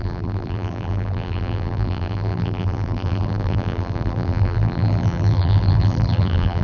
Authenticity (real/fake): fake